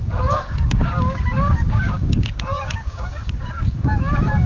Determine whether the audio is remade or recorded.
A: remade